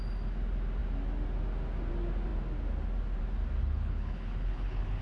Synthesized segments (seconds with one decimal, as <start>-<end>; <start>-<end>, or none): 3.6-5.0